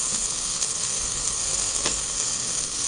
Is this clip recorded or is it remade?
remade